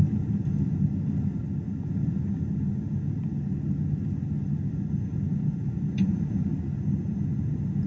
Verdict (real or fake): real